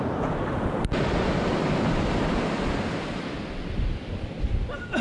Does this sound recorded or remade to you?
recorded